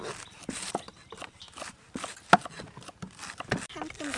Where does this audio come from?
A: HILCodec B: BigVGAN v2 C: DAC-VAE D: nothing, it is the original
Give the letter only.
D